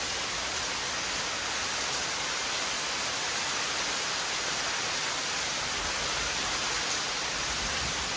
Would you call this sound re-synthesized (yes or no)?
no